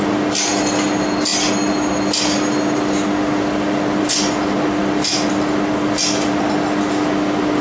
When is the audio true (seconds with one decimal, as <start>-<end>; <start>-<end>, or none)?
0.0-7.6